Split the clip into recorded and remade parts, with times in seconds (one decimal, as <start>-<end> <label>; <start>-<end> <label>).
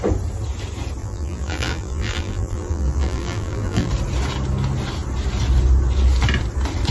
0.0-1.0 recorded; 1.0-3.9 remade; 3.9-6.9 recorded